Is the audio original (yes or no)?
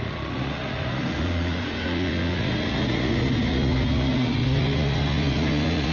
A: no